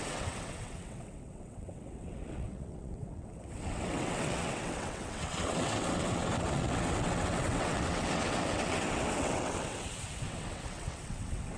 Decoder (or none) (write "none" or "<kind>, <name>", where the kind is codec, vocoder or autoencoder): vocoder, WaveNeXt